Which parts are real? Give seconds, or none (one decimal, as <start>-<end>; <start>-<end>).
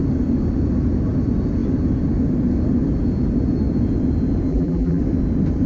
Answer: 0.0-4.5; 5.0-5.7